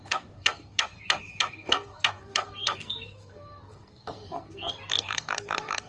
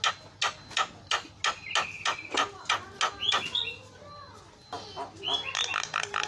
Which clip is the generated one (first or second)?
first